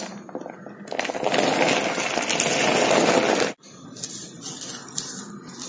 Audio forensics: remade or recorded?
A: recorded